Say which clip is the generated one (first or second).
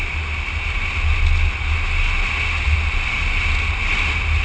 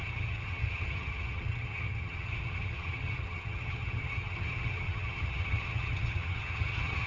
second